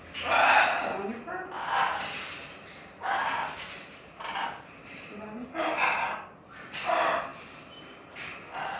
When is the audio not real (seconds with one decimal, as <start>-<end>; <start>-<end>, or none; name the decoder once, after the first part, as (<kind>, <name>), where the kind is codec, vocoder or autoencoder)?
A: 2.8-5.8 (vocoder, BigVGAN v2)